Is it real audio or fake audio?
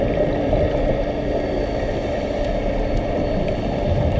real